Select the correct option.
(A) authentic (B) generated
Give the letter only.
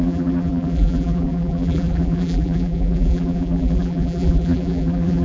B